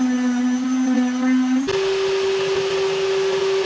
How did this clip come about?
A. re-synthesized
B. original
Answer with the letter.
B